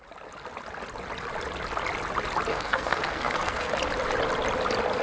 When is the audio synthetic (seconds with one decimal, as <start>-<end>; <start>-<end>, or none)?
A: 2.5-3.7